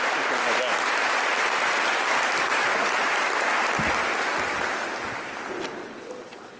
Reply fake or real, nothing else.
real